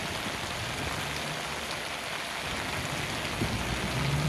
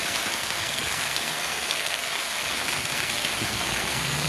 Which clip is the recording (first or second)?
first